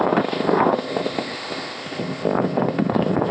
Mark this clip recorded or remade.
remade